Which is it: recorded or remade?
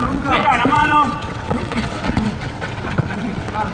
remade